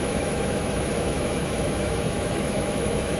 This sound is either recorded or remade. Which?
remade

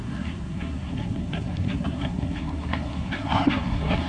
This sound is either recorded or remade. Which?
remade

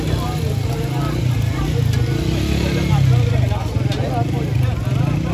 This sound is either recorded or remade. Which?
recorded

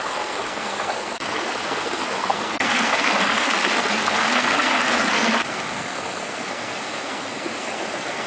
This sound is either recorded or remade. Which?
remade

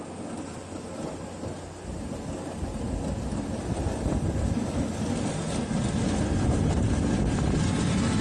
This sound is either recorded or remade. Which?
recorded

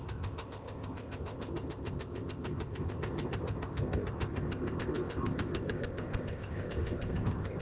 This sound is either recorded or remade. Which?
remade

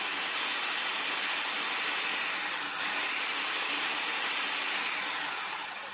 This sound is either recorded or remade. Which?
recorded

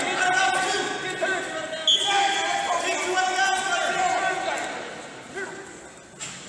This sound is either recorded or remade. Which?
recorded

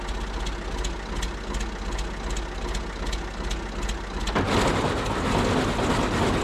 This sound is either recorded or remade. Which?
recorded